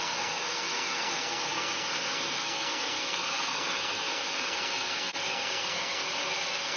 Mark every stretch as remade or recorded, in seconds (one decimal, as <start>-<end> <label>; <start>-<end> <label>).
0.0-6.8 remade